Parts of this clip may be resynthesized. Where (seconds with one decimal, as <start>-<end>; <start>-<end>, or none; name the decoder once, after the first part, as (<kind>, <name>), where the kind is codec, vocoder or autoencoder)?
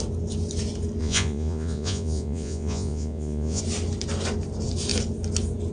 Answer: 1.0-3.6 (vocoder, Vocos)